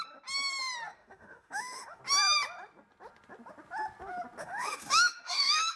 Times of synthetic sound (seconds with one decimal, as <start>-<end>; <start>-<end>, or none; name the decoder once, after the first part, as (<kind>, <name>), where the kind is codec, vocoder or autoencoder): 0.9-2.0 (autoencoder, DAC-VAE); 4.4-5.8